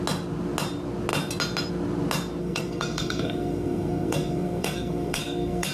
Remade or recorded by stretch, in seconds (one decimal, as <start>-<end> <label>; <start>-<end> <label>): 0.0-2.4 recorded; 2.4-5.7 remade